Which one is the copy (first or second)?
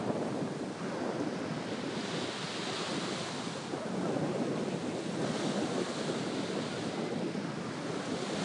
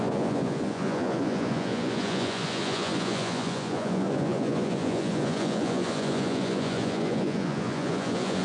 second